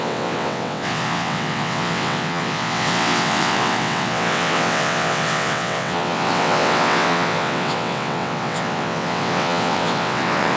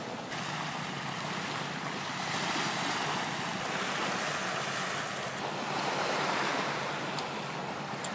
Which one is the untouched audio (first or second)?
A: second